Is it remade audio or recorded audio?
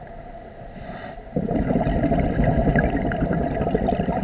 recorded